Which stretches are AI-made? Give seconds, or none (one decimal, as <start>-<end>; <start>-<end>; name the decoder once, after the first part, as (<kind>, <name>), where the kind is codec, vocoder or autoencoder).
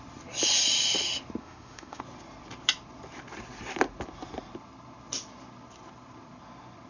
1.4-2.0 (autoencoder, DAC-VAE)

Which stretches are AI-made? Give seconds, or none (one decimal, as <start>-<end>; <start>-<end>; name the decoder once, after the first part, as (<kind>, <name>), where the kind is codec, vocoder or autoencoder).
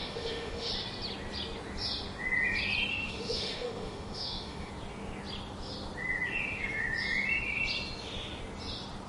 0.0-0.7 (autoencoder, DAC-VAE); 2.9-4.7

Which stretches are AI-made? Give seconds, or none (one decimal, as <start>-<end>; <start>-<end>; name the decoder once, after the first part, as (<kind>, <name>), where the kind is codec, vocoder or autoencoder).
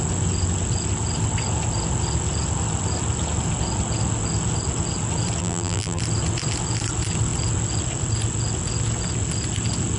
5.4-6.0 (vocoder, BigVGAN v2)